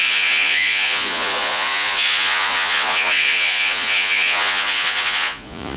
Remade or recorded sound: remade